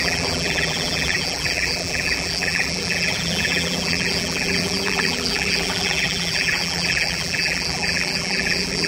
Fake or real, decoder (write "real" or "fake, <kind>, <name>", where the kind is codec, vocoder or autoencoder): fake, vocoder, BigVGAN v2